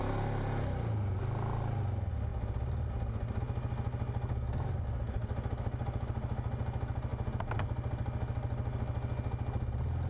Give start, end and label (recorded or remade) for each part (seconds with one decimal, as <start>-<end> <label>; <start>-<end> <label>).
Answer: 0.0-10.1 recorded